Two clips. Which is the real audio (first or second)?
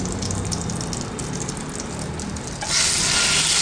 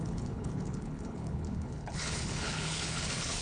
first